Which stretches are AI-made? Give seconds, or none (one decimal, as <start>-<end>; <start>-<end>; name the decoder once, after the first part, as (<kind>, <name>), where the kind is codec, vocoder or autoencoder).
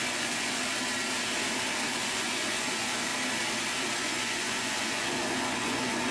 0.0-0.6 (vocoder, Vocos); 1.9-3.1; 4.0-6.1